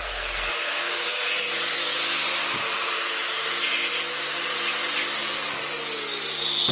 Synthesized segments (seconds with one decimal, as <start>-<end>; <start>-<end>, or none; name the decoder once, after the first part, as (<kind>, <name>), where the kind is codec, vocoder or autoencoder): 0.0-1.3 (codec, SNAC)